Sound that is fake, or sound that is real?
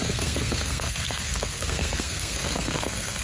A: fake